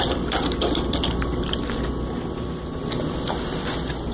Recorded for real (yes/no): yes